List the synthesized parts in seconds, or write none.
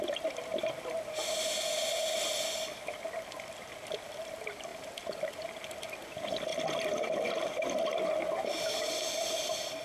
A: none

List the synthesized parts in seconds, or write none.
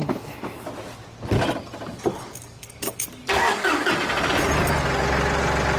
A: 2.1-4.0 (codec, DAC)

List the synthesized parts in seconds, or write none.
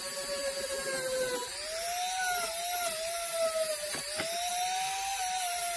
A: none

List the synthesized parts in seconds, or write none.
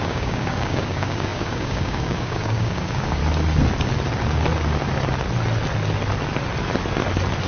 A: 0.0-3.2 (codec, DAC)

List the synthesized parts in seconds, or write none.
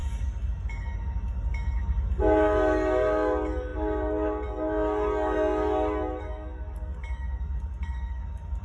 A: 0.0-8.6 (codec, DAC)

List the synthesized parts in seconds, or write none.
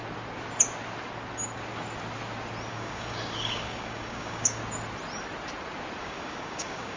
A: 2.7-4.6 (codec, DAC); 6.0-7.0